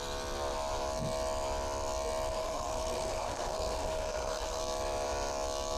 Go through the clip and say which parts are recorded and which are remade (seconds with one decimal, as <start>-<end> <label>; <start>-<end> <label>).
0.0-2.3 recorded; 2.3-4.6 remade; 4.6-5.8 recorded